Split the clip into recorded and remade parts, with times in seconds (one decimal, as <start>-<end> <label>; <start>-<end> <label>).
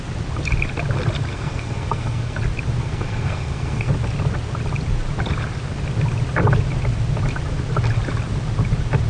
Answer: 0.0-1.3 recorded; 1.3-2.4 remade; 2.4-2.8 recorded; 2.8-3.9 remade; 3.9-9.1 recorded